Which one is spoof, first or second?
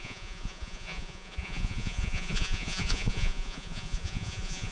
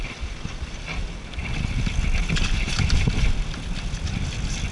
first